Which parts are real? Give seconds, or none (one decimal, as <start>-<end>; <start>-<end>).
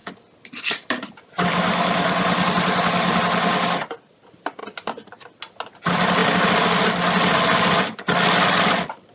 0.0-9.1